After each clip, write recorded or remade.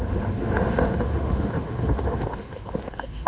remade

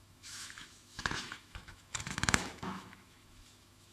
remade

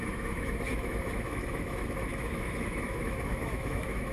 remade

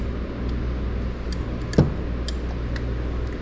recorded